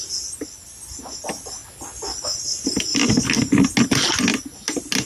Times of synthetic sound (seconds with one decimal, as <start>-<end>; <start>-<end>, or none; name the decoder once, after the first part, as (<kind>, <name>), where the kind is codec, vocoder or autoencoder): none